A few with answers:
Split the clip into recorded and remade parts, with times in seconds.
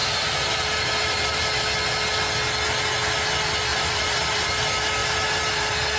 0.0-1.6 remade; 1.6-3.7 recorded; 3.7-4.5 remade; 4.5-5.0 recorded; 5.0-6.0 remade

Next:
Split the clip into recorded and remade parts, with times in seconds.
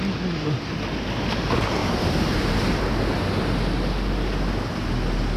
0.0-1.8 recorded; 1.8-2.5 remade; 2.5-5.4 recorded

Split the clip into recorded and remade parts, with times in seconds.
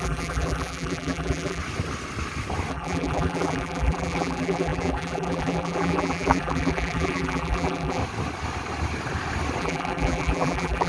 0.0-1.6 remade; 1.6-2.7 recorded; 2.7-8.0 remade; 8.0-9.6 recorded; 9.6-10.9 remade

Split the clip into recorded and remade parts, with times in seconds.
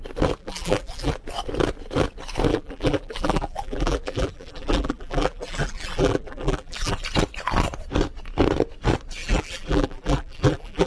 0.0-0.4 recorded; 0.4-1.1 remade; 1.1-2.5 recorded; 2.5-7.0 remade; 7.0-9.2 recorded; 9.2-10.9 remade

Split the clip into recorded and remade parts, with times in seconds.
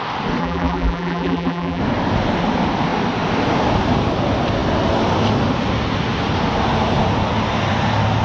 0.0-0.4 recorded; 0.4-1.8 remade; 1.8-8.2 recorded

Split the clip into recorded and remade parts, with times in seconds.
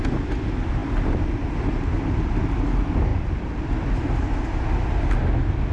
0.0-0.8 recorded; 0.8-1.6 remade; 1.6-3.1 recorded; 3.1-3.7 remade; 3.7-5.7 recorded